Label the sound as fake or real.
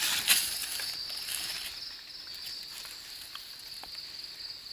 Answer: real